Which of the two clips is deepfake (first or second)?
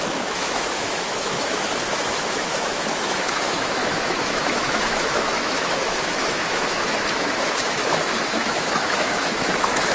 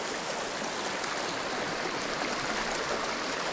first